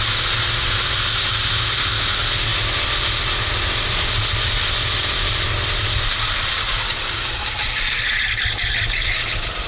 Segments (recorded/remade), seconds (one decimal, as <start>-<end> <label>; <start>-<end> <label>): 0.0-9.7 recorded